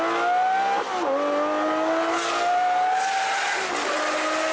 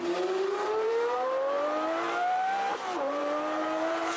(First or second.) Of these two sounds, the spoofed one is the second